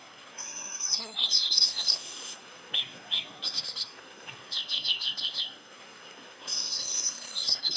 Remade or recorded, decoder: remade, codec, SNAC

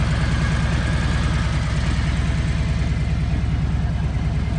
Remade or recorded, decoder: recorded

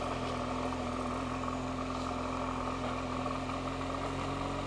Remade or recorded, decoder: recorded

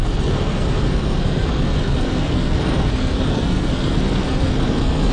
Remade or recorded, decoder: remade, codec, SNAC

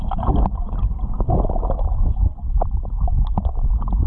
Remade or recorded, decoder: recorded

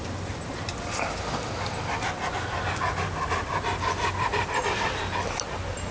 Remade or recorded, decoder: recorded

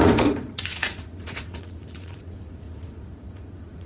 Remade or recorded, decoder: remade, vocoder, Vocos